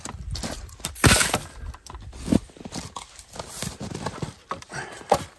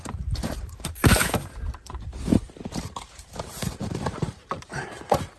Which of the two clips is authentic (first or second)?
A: first